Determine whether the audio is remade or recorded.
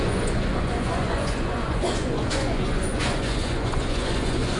remade